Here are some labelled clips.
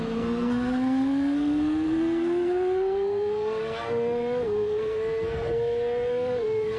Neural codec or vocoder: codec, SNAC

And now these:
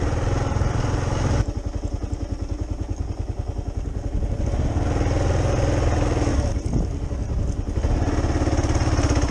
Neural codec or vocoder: none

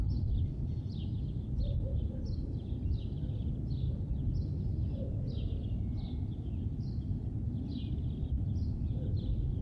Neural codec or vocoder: none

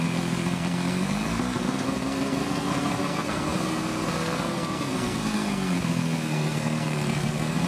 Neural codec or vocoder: codec, SNAC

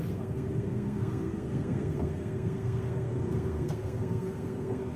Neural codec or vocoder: codec, SNAC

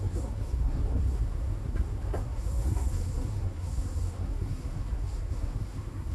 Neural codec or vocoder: codec, SNAC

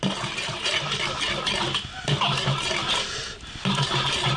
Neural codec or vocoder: none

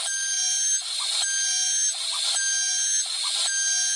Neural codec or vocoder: none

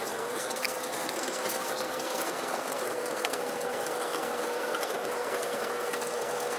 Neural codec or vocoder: codec, SNAC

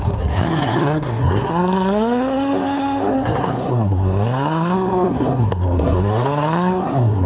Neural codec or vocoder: codec, SNAC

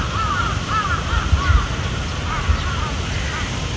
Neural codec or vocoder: none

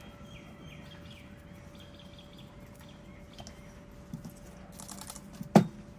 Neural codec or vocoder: none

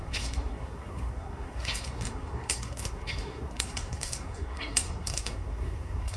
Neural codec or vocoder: codec, SNAC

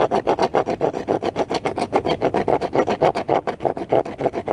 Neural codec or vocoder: none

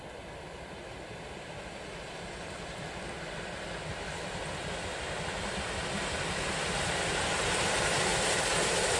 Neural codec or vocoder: none